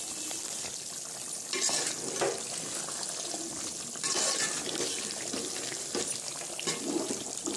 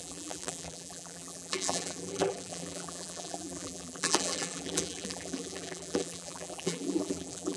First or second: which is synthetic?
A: second